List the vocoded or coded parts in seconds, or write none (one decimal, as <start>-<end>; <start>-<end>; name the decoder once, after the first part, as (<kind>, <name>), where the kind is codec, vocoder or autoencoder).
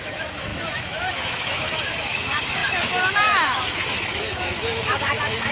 0.0-5.5 (autoencoder, DAC-VAE)